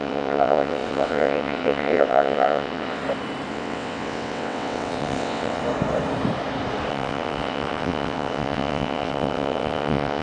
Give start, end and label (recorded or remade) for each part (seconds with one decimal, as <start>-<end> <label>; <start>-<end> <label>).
0.0-3.0 remade; 3.0-3.5 recorded; 3.5-5.6 remade; 5.6-6.9 recorded; 6.9-10.2 remade